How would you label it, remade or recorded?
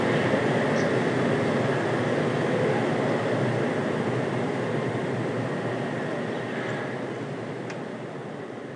recorded